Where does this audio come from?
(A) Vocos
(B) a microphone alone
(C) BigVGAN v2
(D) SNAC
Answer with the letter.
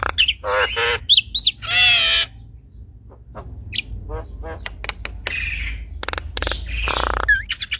B